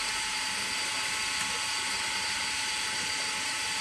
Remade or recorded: remade